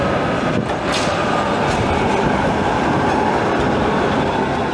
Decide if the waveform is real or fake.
real